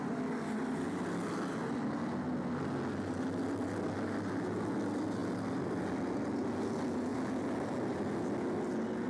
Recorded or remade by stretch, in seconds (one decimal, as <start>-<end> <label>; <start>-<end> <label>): 0.0-9.1 recorded